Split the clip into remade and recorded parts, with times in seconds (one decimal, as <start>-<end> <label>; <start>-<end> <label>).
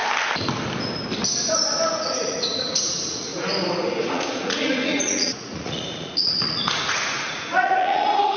0.0-2.0 recorded; 2.0-3.3 remade; 3.3-4.1 recorded; 4.1-8.4 remade